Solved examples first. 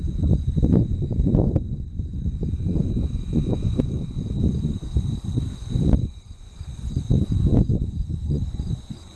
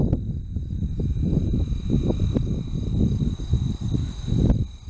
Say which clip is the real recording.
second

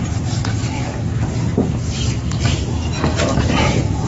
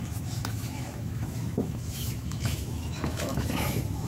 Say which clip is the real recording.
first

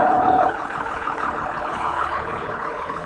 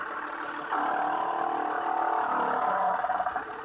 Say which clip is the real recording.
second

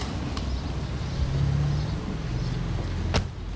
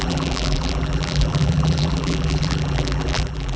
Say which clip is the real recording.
first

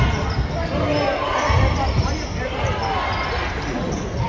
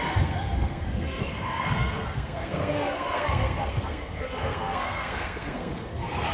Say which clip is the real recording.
first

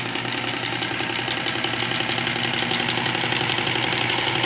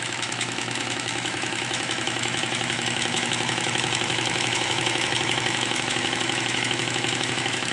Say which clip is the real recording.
first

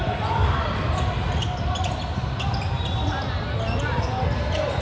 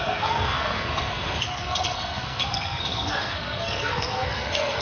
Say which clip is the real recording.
first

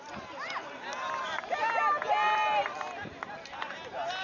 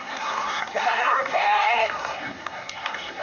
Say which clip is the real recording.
first